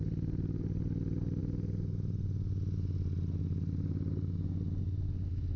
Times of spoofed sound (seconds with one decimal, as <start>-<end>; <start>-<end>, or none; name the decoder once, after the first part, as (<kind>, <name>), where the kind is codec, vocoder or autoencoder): none